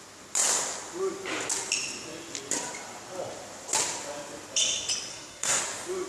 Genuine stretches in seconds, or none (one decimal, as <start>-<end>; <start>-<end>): 0.0-5.1; 5.6-6.1